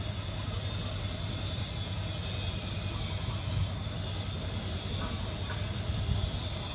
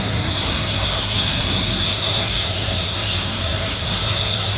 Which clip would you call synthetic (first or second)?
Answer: second